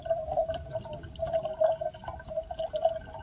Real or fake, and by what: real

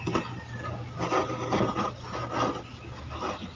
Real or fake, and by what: real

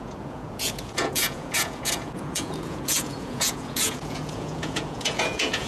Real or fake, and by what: fake, vocoder, Vocos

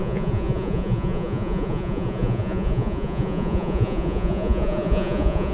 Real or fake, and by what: fake, vocoder, Vocos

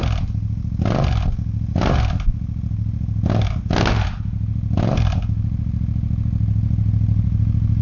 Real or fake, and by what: real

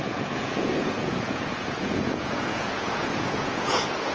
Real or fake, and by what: fake, vocoder, Vocos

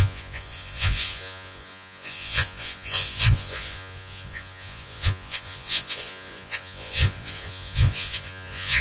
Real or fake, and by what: fake, vocoder, Vocos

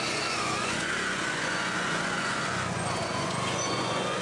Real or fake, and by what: fake, vocoder, Vocos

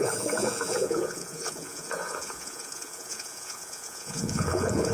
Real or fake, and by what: fake, vocoder, Vocos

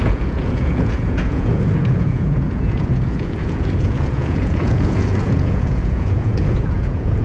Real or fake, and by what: fake, vocoder, Vocos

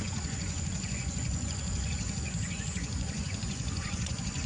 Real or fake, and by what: fake, vocoder, Vocos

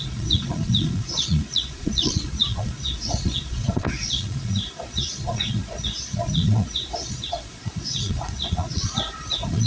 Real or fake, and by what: fake, vocoder, Vocos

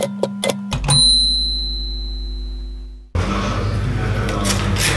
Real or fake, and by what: real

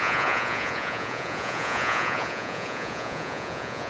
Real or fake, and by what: fake, vocoder, Vocos